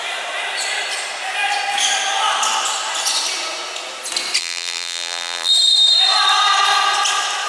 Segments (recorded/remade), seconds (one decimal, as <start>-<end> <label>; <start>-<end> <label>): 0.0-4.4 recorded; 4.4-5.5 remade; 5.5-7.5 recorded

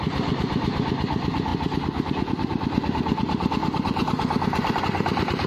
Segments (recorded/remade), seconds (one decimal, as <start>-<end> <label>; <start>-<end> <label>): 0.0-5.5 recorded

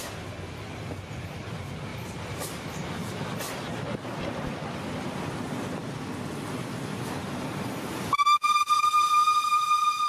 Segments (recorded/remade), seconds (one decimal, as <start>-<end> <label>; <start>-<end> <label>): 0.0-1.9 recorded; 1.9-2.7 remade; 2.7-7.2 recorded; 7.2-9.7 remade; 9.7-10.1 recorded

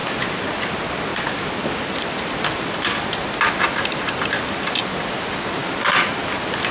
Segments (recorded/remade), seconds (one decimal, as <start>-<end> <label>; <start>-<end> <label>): 0.0-0.6 remade; 0.6-1.1 recorded; 1.1-3.5 remade; 3.5-5.6 recorded; 5.6-6.2 remade; 6.2-6.7 recorded

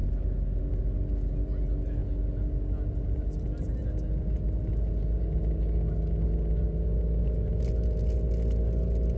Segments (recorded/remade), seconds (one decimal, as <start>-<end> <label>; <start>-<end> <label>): 0.0-9.2 recorded

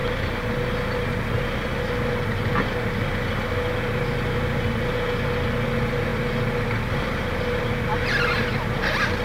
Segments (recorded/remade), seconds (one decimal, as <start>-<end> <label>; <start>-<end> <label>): 0.0-6.1 recorded; 6.1-7.6 remade; 7.6-9.2 recorded